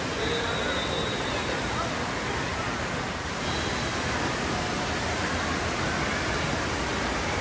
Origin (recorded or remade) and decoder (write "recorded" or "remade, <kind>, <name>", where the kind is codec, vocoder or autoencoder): recorded